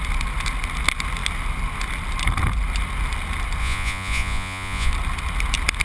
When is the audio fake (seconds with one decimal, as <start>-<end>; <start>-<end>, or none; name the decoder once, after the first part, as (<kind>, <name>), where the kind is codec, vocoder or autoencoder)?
3.6-4.9 (vocoder, Vocos)